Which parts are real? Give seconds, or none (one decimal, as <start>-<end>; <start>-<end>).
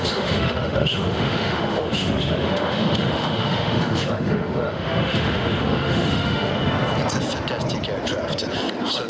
6.5-9.1